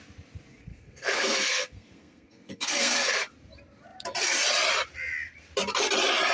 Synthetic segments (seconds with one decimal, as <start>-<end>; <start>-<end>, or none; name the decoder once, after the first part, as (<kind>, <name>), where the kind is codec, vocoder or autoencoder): 0.7-3.1 (codec, SNAC)